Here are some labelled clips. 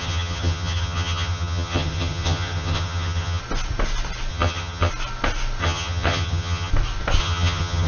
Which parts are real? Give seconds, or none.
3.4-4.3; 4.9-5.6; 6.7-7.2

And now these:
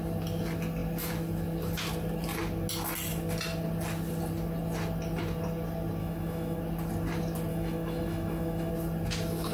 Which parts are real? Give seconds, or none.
0.0-6.0; 6.6-7.5; 8.7-9.5